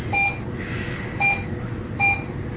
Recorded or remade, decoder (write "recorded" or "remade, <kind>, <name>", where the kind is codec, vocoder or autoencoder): recorded